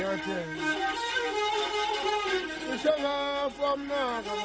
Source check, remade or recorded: recorded